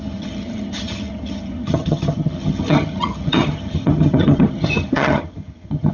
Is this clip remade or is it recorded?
remade